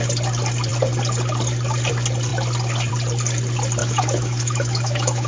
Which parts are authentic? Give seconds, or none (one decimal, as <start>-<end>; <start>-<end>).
0.0-3.8